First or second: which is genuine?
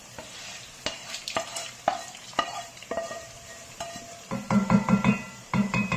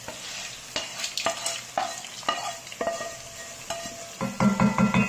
second